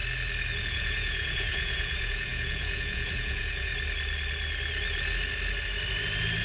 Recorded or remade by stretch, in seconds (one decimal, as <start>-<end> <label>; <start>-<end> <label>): 0.0-0.6 recorded; 0.6-3.7 remade; 3.7-6.4 recorded